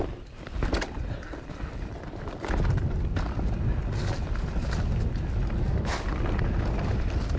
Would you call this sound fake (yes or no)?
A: no